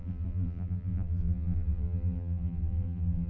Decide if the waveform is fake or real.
fake